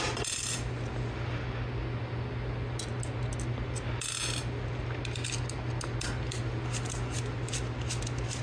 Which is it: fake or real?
real